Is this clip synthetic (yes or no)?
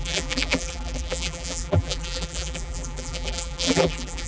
yes